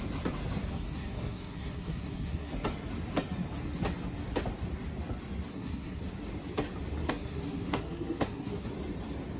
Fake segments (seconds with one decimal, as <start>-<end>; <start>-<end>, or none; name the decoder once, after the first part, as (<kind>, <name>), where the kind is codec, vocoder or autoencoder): 0.7-2.5 (codec, SNAC); 5.5-6.0; 7.0-8.7